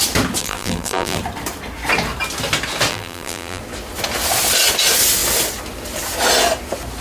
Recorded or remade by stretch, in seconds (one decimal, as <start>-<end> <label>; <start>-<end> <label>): 0.0-0.4 recorded; 0.4-1.2 remade; 1.2-2.9 recorded; 2.9-3.6 remade; 3.6-7.0 recorded